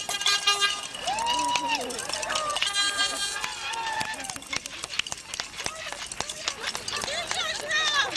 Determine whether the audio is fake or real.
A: real